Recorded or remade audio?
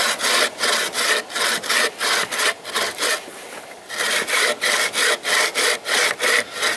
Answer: recorded